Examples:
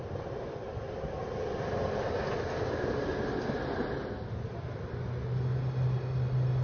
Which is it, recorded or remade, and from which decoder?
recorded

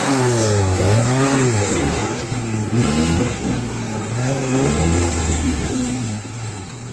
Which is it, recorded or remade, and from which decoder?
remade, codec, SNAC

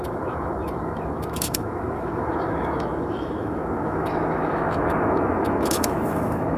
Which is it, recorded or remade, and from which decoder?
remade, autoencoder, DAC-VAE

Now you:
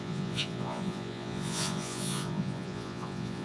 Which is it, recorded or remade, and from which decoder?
remade, vocoder, Vocos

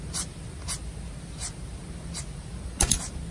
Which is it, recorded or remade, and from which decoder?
recorded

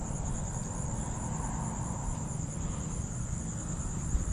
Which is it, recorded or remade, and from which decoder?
recorded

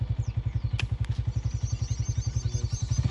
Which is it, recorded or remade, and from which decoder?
recorded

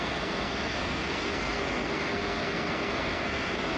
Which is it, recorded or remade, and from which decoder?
remade, codec, SNAC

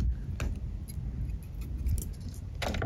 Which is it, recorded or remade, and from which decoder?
recorded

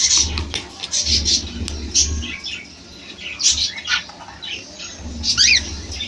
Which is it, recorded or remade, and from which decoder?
recorded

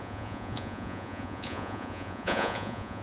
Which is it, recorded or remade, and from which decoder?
remade, vocoder, Vocos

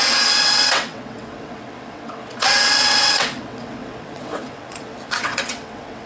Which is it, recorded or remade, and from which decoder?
remade, vocoder, WaveNeXt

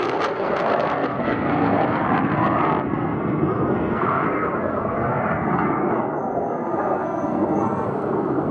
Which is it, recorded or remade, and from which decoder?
remade, codec, SNAC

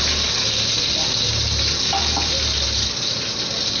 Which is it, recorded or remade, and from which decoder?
recorded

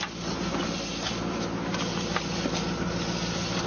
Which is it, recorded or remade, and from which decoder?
recorded